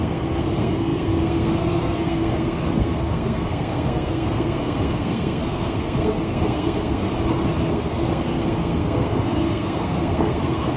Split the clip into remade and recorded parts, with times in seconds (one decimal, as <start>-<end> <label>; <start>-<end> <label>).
0.0-7.1 remade; 7.1-7.7 recorded; 7.7-10.8 remade